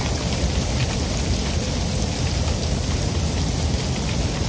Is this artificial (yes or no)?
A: no